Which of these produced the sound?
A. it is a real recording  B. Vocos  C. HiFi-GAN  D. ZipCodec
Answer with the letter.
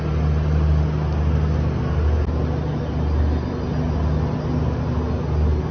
A